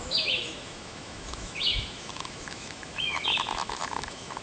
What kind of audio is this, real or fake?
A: fake